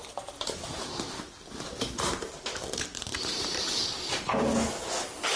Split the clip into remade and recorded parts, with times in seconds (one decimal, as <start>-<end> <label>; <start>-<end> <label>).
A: 0.0-1.2 remade; 1.2-2.9 recorded; 2.9-3.5 remade; 3.5-5.4 recorded